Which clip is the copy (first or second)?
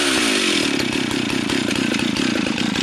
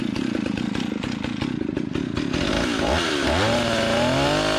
first